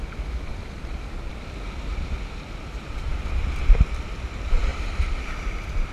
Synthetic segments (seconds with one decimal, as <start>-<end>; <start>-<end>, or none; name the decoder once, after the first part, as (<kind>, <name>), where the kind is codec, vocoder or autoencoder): 0.5-1.3 (vocoder, BigVGAN v2)